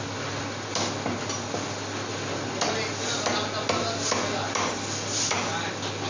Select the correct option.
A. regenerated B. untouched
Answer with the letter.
B